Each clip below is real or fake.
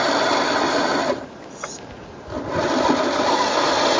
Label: real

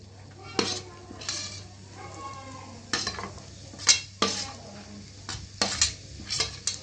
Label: real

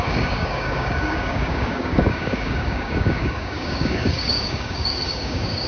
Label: fake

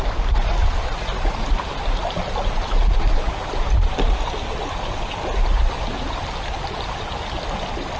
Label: real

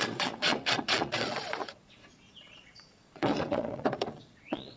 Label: fake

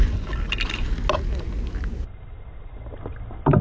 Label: real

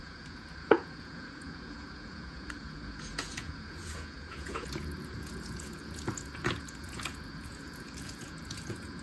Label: fake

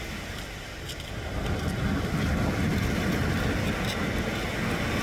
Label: real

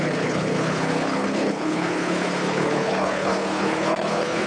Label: fake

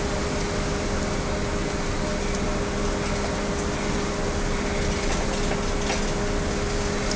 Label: real